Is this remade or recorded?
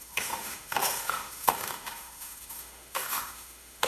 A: remade